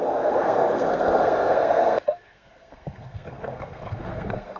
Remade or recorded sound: remade